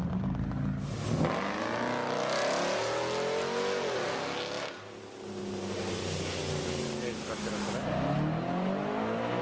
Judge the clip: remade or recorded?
recorded